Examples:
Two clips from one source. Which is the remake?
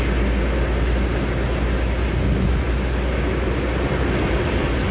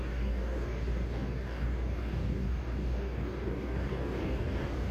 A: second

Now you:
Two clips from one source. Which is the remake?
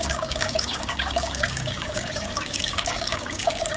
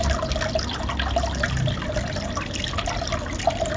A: first